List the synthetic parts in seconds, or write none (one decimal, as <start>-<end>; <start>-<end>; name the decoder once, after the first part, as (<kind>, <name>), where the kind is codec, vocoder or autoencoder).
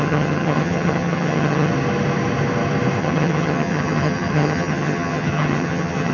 0.0-1.7 (vocoder, HiFi-GAN); 3.0-6.1